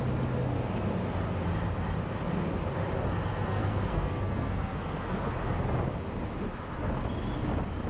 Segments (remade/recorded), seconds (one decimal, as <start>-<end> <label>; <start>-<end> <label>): 0.0-3.5 recorded; 3.5-5.3 remade; 5.3-7.9 recorded